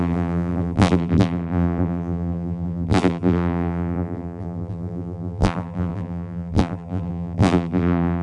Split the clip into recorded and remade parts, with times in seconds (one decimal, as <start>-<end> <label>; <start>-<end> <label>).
0.0-8.2 remade